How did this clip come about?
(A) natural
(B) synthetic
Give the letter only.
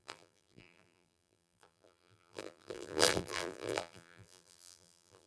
B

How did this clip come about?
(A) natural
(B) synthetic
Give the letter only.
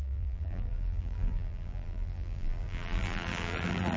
B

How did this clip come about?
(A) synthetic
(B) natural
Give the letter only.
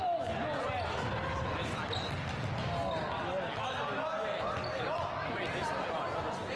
B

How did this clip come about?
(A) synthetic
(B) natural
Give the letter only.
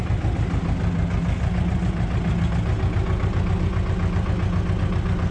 B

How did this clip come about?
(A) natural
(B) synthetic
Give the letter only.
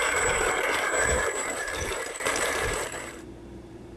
B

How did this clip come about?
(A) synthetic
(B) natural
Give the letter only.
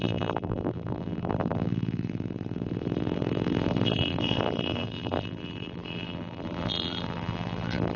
A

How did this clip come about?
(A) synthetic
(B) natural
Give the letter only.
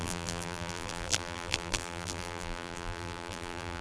A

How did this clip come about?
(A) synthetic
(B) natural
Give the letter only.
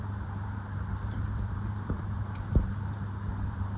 A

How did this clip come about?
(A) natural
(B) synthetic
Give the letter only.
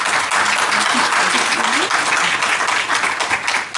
A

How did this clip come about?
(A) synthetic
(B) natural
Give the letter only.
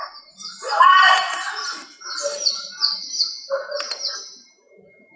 B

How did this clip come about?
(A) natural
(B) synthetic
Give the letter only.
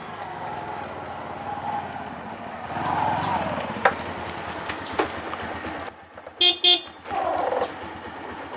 A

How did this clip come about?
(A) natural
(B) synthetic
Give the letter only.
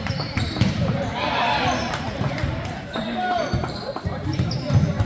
B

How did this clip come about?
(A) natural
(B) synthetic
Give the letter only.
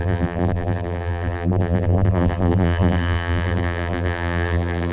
B